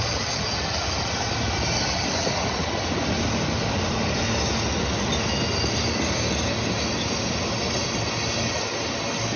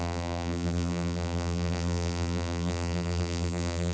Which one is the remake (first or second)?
second